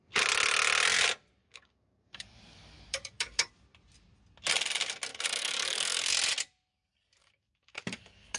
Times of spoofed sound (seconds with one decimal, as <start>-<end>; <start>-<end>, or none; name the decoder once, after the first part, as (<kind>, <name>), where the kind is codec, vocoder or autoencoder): 1.4-3.5 (codec, DAC); 5.1-6.1; 7.2-8.4